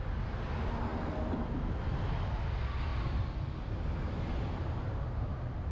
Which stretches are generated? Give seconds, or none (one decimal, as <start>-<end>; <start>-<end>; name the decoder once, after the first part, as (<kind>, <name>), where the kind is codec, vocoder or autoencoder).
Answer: 2.9-3.4 (vocoder, BigVGAN v2)